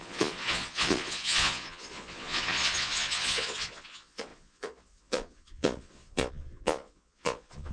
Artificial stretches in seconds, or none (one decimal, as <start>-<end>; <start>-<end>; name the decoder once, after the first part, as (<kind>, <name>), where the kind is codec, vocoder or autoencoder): 0.0-7.7 (vocoder, Vocos)